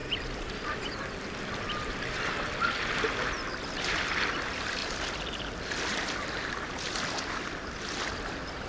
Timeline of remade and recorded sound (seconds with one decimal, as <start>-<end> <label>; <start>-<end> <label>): 0.0-2.1 remade; 2.1-8.7 recorded